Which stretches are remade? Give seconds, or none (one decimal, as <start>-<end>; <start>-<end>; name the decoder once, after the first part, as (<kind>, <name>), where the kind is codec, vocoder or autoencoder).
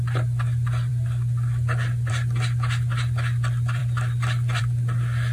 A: none